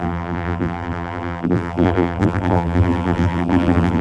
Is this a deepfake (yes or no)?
yes